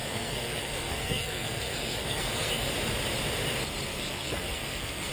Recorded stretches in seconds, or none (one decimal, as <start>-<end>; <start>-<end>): 2.7-3.9